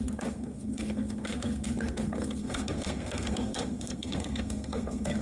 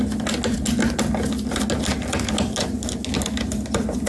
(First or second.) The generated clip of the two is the first